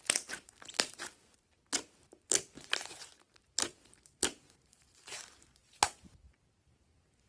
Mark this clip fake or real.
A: fake